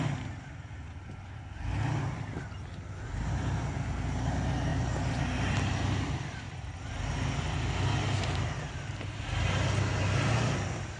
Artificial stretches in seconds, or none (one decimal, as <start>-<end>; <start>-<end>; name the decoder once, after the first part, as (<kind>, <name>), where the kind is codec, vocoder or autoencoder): none